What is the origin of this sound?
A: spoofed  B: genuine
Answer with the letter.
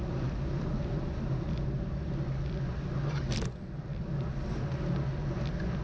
B